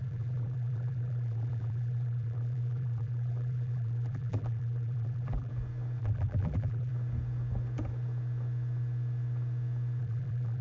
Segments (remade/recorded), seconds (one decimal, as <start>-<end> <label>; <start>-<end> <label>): 0.0-5.5 remade; 5.5-6.0 recorded; 6.0-6.9 remade; 6.9-10.0 recorded; 10.0-10.6 remade